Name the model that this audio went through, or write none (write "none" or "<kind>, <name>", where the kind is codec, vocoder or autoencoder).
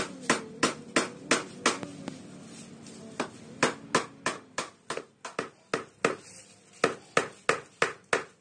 none